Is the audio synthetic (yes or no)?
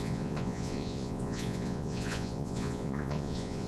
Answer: yes